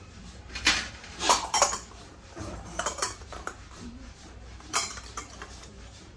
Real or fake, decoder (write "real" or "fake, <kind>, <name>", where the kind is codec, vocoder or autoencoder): fake, vocoder, BigVGAN v2